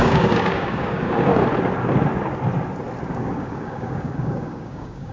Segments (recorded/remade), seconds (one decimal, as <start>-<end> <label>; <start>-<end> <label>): 0.0-1.3 remade; 1.3-3.1 recorded; 3.1-5.1 remade